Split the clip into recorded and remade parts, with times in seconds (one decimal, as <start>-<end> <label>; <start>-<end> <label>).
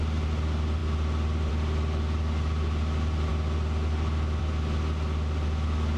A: 0.0-6.0 recorded